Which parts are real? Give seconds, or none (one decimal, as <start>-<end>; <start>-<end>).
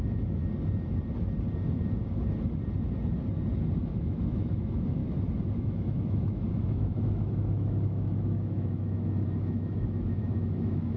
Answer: 0.4-3.8; 5.0-5.5